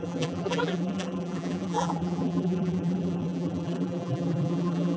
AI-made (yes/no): yes